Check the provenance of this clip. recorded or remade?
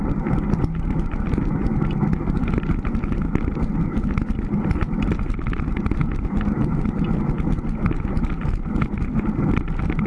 recorded